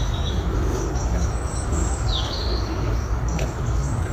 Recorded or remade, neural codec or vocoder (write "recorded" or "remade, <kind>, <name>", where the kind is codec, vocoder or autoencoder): remade, codec, DAC